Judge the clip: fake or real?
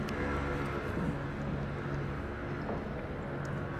real